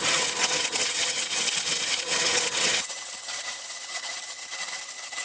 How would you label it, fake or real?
fake